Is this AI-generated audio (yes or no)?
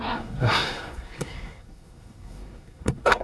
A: yes